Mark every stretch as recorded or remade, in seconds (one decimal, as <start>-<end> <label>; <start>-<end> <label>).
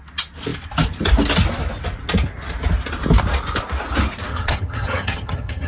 0.0-4.3 recorded; 4.3-5.7 remade